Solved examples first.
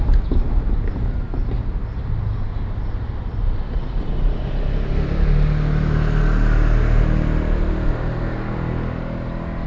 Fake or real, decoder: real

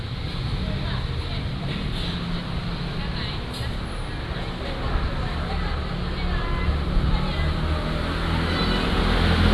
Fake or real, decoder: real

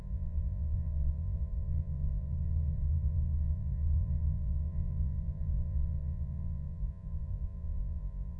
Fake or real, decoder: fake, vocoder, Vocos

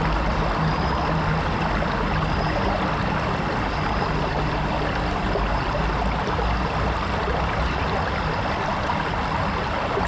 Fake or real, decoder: real